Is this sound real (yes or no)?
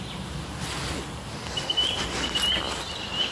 yes